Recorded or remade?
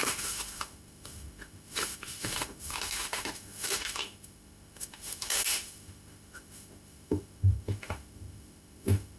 remade